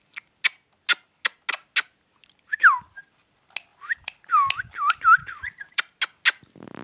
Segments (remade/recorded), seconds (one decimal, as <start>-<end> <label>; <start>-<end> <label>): 0.0-3.7 recorded; 3.7-4.3 remade; 4.3-5.2 recorded; 5.2-6.0 remade; 6.0-6.8 recorded